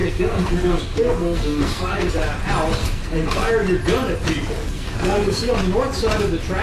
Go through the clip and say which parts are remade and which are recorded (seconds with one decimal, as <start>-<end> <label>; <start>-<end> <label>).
0.0-2.1 remade; 2.1-2.8 recorded; 2.8-3.5 remade; 3.5-4.6 recorded; 4.6-5.5 remade; 5.5-6.6 recorded